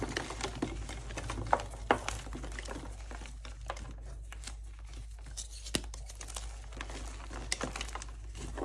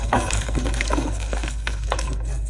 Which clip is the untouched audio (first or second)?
first